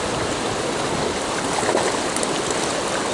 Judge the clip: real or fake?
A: real